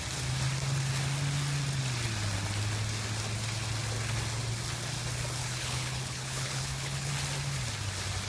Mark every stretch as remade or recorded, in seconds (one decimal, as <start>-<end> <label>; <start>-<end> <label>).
0.0-5.4 recorded; 5.4-7.1 remade; 7.1-8.3 recorded